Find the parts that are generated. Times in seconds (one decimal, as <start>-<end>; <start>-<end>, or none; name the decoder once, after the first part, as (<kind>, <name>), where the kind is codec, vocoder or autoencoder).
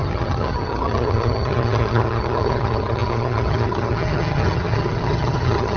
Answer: 0.0-5.8 (vocoder, HiFi-GAN)